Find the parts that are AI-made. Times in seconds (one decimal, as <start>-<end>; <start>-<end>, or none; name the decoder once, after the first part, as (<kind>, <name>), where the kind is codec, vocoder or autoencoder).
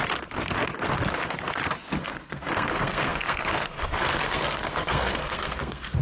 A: 2.0-6.0 (codec, SNAC)